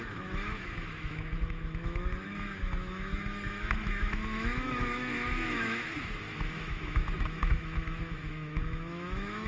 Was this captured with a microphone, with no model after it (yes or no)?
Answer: no